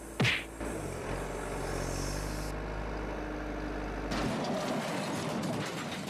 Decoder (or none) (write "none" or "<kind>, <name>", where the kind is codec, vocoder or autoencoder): none